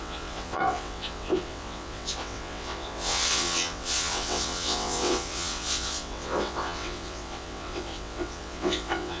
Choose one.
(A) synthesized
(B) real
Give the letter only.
A